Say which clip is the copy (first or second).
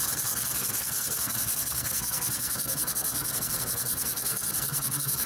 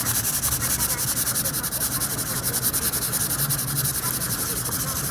first